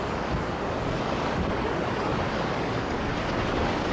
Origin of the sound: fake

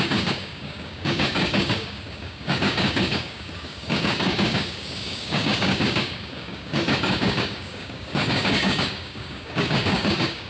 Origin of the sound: fake